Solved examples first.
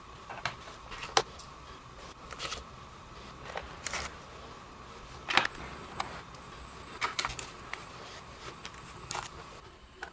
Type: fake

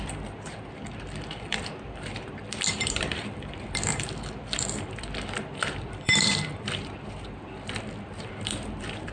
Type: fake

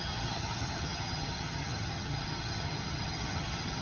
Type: fake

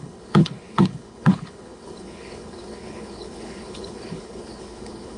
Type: fake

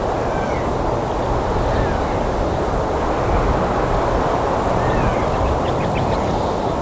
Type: real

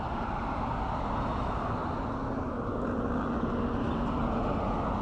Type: real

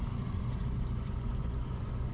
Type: fake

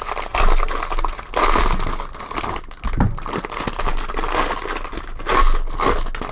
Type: real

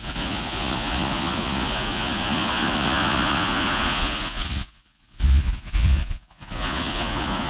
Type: fake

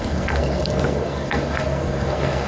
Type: fake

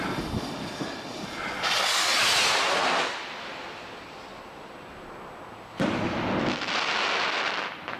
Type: real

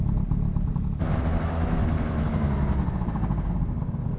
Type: real